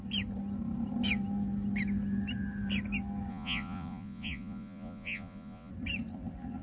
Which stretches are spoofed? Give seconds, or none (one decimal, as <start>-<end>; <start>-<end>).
3.3-5.7